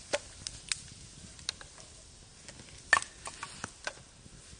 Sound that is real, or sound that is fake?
real